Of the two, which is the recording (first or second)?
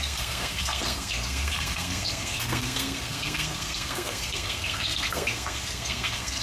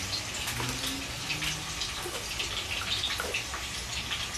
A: second